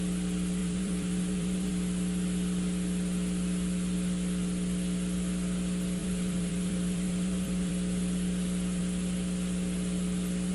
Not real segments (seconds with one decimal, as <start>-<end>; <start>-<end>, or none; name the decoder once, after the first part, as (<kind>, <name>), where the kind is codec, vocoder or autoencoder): 0.6-1.7 (vocoder, BigVGAN v2); 6.0-7.7